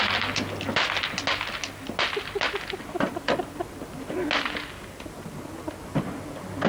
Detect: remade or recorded recorded